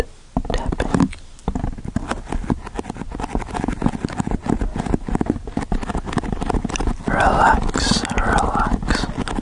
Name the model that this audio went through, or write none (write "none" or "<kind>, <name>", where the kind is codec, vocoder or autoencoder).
none